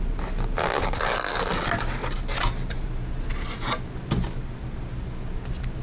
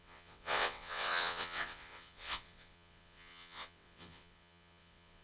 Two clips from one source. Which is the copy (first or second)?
second